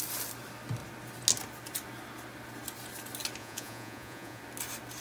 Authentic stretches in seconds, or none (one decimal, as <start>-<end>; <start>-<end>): 0.0-3.4; 4.4-5.0